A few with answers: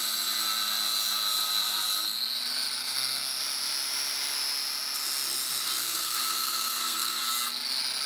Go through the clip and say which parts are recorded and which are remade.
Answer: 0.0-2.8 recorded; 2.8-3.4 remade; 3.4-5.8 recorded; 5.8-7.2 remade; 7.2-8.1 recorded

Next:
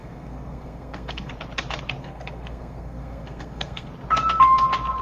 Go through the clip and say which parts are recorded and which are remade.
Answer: 0.0-1.3 remade; 1.3-2.0 recorded; 2.0-3.9 remade; 3.9-5.0 recorded